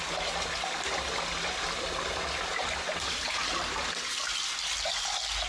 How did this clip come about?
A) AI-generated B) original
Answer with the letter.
B